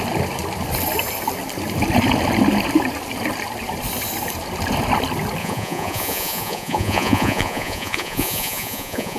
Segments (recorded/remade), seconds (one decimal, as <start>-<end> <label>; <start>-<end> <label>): 0.0-5.4 recorded; 5.4-9.2 remade

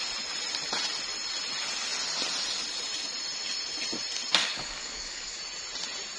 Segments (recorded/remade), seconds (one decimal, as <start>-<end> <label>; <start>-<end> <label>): 0.0-4.4 recorded; 4.4-5.4 remade; 5.4-6.2 recorded